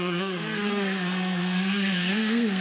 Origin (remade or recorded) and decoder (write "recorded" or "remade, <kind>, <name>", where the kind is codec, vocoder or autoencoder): remade, codec, SNAC